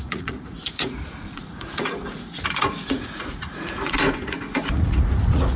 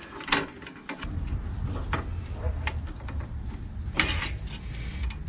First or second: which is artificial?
first